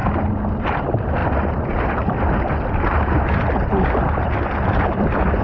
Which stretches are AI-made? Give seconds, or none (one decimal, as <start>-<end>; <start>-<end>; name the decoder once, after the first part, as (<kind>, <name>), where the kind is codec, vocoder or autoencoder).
none

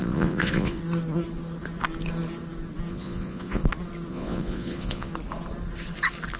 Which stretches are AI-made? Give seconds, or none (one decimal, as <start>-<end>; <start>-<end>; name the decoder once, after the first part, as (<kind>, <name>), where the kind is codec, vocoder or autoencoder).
0.0-0.8 (vocoder, Vocos); 2.9-3.6; 4.1-5.1

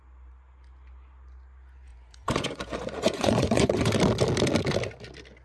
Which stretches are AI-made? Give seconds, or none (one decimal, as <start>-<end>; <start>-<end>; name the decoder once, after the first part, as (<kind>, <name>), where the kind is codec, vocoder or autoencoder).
1.9-3.9 (vocoder, Vocos)

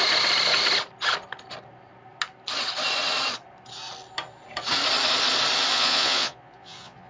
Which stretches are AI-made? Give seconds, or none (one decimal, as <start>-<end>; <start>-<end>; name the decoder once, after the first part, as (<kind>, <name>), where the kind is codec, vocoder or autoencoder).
5.7-7.1 (vocoder, Vocos)

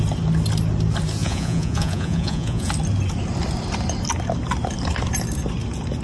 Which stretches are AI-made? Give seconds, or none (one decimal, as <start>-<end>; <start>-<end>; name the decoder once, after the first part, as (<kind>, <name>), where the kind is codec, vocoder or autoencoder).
1.2-2.7 (vocoder, Vocos)

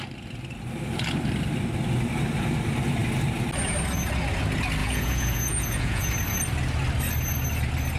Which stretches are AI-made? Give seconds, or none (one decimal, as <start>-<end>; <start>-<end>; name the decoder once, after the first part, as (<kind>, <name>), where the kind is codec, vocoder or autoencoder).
4.8-6.1 (vocoder, Vocos)

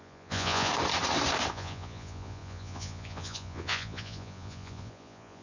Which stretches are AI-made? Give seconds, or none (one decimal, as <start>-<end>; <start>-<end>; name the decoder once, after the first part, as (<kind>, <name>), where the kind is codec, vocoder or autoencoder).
0.0-0.7 (vocoder, Vocos); 1.5-5.4

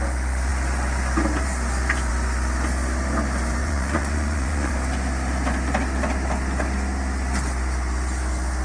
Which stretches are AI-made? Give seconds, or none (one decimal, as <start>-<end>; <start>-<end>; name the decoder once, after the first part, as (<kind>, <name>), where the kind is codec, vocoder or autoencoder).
3.6-4.7 (vocoder, Vocos)